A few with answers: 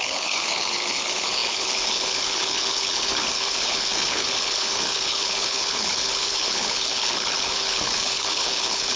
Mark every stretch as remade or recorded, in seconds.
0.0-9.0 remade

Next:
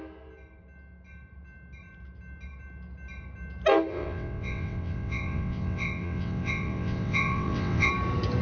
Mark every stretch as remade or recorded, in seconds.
0.0-3.9 recorded; 3.9-7.9 remade; 7.9-8.4 recorded

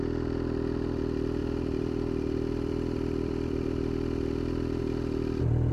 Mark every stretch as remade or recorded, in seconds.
0.0-1.4 recorded; 1.4-4.8 remade; 4.8-5.7 recorded

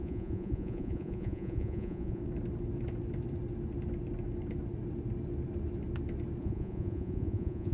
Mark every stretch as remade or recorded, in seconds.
0.0-2.2 remade; 2.2-6.4 recorded; 6.4-7.7 remade